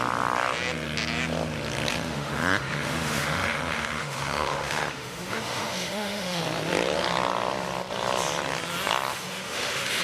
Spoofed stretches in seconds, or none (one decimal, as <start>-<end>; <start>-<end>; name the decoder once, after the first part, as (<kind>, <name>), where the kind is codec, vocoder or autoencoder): 1.9-6.4 (autoencoder, DAC-VAE); 9.1-10.0